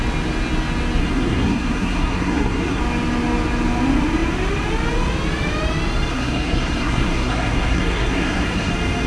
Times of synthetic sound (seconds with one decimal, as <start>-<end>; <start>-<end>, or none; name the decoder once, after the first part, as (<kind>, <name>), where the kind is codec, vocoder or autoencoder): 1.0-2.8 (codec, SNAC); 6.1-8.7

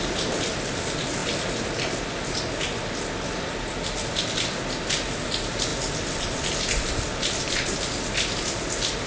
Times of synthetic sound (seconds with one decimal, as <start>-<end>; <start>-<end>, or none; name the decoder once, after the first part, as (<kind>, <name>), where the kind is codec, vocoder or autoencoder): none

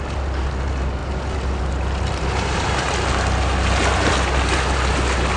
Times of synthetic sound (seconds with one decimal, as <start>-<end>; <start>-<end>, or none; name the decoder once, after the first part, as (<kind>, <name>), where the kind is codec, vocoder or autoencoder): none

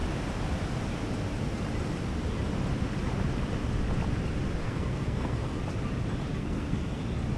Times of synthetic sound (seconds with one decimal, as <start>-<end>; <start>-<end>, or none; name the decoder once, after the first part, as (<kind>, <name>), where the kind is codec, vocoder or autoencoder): 4.6-5.6 (codec, SNAC); 6.3-7.0

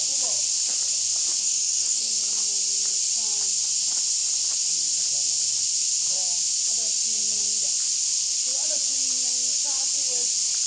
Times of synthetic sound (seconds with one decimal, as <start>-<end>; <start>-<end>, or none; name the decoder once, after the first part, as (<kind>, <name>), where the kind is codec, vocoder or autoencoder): 1.4-2.1 (codec, SNAC)

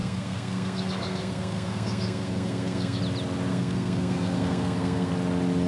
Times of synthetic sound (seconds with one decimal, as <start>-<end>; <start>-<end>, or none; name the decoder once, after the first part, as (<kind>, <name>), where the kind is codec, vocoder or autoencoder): 0.0-3.0 (codec, SNAC); 3.5-5.1